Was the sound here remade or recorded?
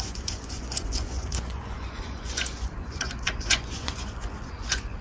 remade